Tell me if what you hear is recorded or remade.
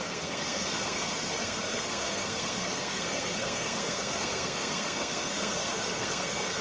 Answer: remade